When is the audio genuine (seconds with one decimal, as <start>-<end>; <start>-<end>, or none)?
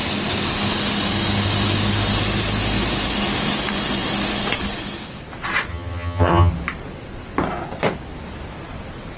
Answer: 0.0-5.7; 6.5-9.2